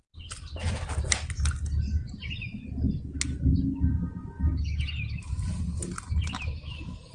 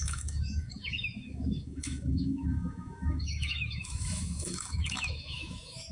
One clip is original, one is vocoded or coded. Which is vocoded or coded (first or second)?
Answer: second